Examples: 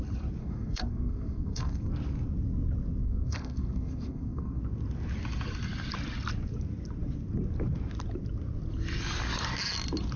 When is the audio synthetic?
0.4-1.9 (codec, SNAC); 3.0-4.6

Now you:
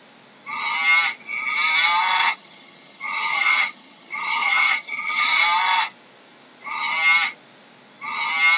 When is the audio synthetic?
2.2-5.4 (vocoder, HiFi-GAN)

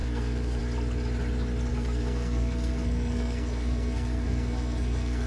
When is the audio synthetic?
0.0-0.6 (codec, SNAC); 1.7-5.3

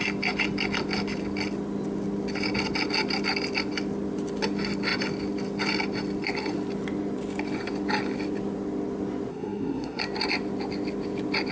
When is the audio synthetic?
9.3-10.0 (codec, SNAC)

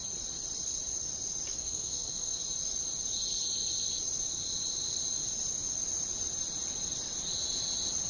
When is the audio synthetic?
1.5-2.4 (codec, SNAC)

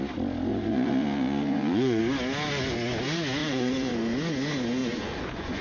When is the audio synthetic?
0.5-2.0 (vocoder, Vocos); 3.4-3.9; 4.8-5.6